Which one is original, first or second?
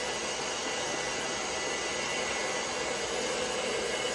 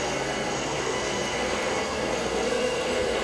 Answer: first